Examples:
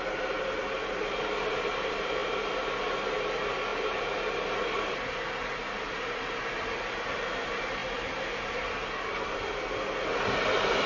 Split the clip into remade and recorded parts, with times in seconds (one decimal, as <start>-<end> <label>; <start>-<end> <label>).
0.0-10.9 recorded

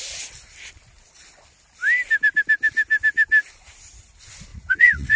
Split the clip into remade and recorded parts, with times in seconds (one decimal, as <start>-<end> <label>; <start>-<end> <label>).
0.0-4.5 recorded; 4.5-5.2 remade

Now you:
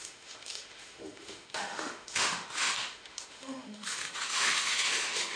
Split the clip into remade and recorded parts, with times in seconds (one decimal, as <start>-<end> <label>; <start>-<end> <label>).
0.0-5.4 remade

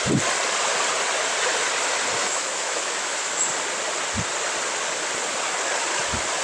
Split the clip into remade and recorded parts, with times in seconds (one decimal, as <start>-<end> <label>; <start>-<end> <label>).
0.0-2.2 recorded; 2.2-3.4 remade; 3.4-6.4 recorded

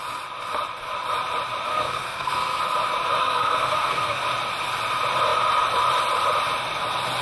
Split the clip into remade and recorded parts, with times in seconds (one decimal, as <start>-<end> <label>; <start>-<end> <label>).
0.0-1.7 recorded; 1.7-2.6 remade; 2.6-3.2 recorded; 3.2-4.2 remade; 4.2-7.2 recorded

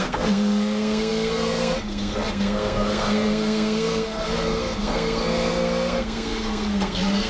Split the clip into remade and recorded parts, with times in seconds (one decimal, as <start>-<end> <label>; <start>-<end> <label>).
0.0-7.3 remade